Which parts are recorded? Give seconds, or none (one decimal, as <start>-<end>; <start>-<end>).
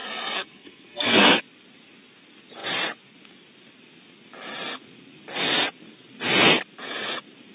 1.4-7.5